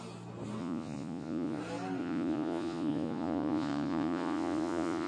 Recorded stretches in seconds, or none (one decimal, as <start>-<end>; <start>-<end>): 0.0-0.6; 1.6-2.0